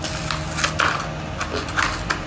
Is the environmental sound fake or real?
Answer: real